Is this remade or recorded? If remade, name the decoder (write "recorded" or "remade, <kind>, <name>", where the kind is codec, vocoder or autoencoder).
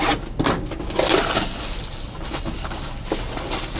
recorded